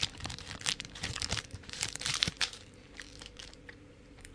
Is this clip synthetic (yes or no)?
yes